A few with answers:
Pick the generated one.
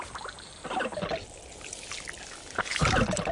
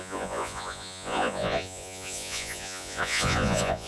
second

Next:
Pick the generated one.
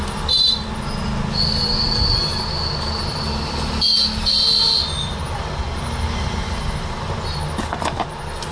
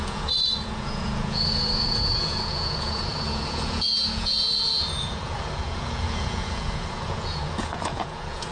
second